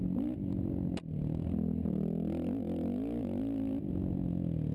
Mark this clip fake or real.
real